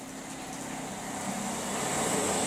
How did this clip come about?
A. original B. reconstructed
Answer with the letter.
A